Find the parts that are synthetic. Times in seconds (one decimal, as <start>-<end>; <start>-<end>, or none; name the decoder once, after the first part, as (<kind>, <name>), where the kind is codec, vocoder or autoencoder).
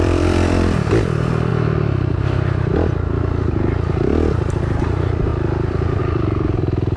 0.0-1.5 (vocoder, BigVGAN v2); 2.2-2.7; 4.6-7.0